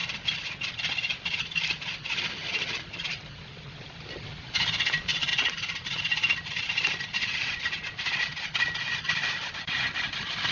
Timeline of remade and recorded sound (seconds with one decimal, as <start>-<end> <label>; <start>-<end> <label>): 0.0-10.5 recorded